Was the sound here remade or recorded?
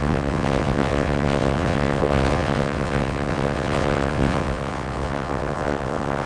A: remade